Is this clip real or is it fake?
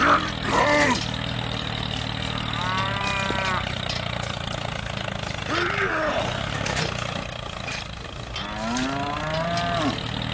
real